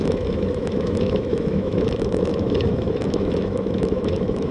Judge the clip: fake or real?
fake